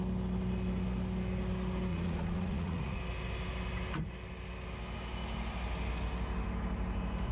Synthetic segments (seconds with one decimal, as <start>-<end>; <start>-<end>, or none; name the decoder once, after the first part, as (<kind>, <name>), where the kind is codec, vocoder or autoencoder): 1.9-3.0 (vocoder, Vocos)